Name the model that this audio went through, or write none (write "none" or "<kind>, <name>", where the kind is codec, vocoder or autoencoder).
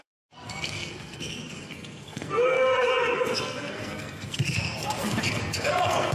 codec, SNAC